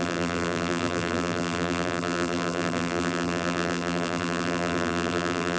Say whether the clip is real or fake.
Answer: fake